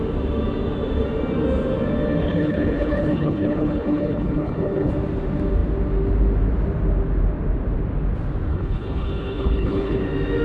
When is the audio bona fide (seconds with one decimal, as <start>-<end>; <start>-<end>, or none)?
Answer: 0.0-2.2; 4.9-8.5; 10.0-10.4